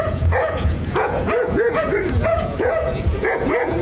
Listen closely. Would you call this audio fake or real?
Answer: fake